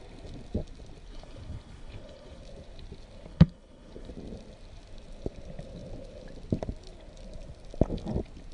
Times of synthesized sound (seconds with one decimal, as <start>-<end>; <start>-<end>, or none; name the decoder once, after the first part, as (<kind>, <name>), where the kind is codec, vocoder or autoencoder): 1.1-2.4 (codec, HILCodec); 3.3-4.1